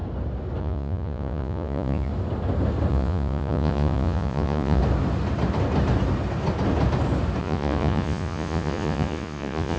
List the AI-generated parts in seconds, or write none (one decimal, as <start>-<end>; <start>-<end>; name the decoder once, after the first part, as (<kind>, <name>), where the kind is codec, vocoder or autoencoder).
0.6-2.1 (vocoder, Vocos); 2.9-4.8; 7.4-9.8